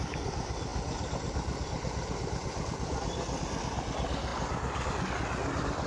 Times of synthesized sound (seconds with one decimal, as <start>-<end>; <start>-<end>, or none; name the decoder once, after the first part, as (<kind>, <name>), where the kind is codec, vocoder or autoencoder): none